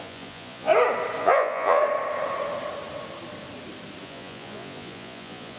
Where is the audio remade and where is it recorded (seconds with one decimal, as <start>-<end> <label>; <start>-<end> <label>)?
0.0-0.7 remade; 0.7-1.2 recorded; 1.2-1.8 remade; 1.8-4.0 recorded; 4.0-5.6 remade